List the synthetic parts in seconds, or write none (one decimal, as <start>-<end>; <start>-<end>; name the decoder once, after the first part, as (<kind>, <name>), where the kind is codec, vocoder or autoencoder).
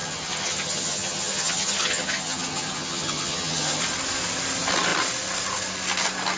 0.0-3.8 (vocoder, HiFi-GAN)